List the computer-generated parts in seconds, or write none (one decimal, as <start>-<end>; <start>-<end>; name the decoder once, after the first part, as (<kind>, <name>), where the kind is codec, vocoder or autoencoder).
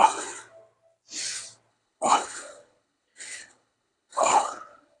1.7-5.0 (codec, HILCodec)